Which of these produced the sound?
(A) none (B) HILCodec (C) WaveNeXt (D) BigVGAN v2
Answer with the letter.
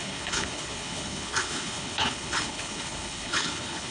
B